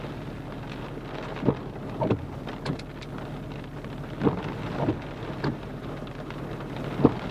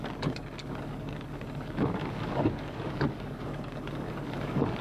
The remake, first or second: second